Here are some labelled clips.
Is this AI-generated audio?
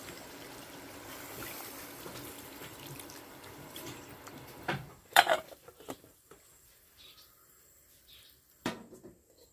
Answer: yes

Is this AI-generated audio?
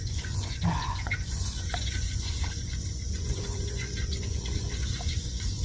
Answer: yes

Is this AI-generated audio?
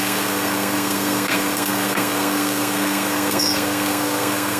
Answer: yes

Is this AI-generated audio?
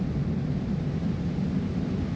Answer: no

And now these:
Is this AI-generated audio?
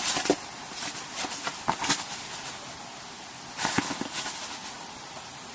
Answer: no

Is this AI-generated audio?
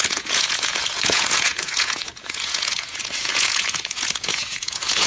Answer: yes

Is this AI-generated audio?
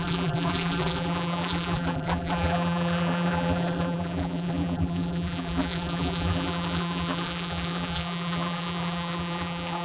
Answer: yes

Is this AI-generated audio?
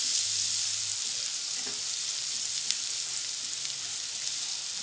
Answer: no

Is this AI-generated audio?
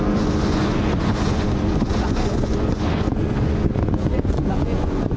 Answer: yes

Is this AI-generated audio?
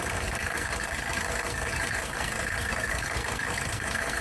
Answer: yes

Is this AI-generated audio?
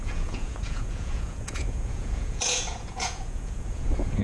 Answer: yes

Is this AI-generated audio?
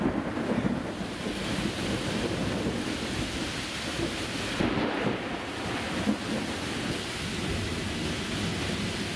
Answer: no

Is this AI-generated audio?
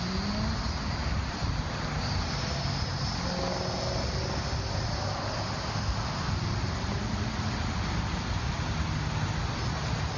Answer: no